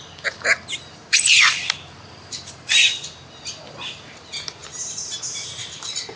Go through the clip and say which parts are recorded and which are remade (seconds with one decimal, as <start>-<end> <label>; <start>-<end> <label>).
0.0-1.0 recorded; 1.0-2.5 remade; 2.5-4.6 recorded; 4.6-6.2 remade